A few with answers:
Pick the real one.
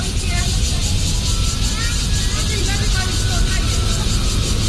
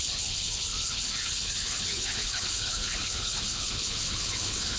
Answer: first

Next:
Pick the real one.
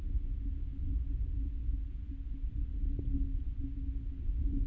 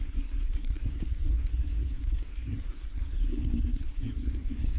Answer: first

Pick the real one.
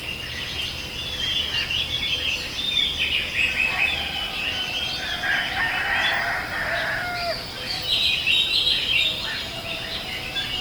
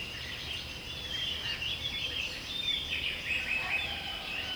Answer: first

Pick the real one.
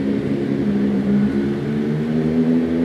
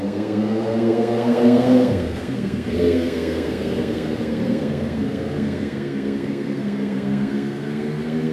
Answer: first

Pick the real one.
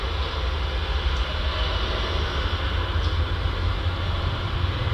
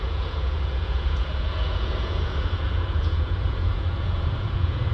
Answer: first